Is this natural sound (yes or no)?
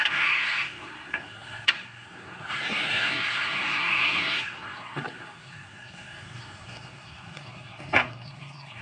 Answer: no